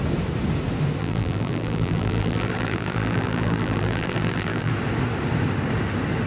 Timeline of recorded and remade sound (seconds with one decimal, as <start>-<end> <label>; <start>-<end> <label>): 0.0-1.0 recorded; 1.0-4.7 remade; 4.7-6.3 recorded